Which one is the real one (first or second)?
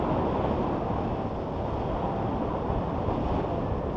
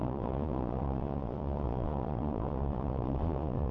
first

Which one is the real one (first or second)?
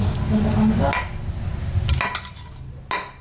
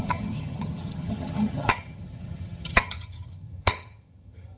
first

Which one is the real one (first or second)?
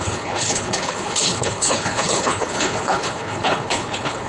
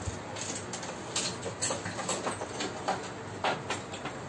second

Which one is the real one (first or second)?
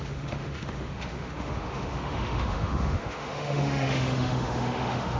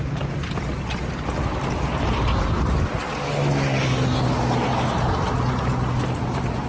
second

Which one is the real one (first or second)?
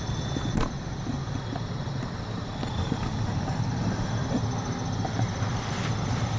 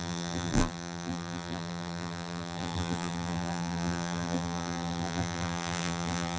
first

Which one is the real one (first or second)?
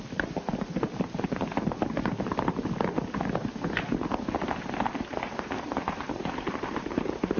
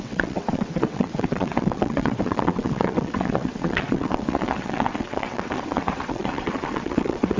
first